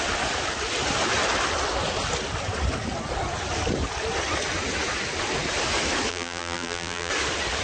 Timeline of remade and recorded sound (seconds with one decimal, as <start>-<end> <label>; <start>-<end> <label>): 0.0-6.1 recorded; 6.1-7.1 remade; 7.1-7.6 recorded